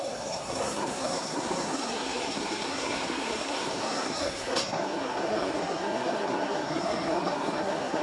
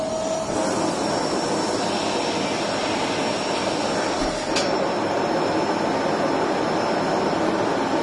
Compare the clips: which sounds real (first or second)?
second